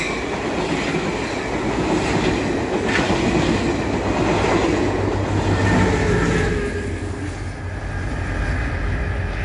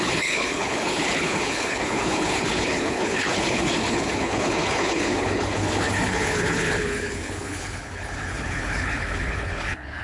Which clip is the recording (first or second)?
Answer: first